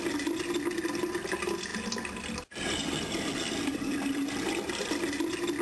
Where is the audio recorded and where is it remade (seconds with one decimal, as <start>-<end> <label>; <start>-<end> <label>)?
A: 0.0-5.6 recorded